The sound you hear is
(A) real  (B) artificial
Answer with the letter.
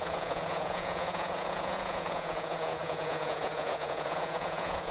B